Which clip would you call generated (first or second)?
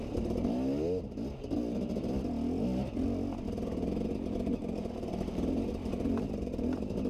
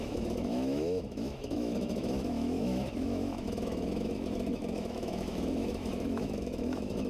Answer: second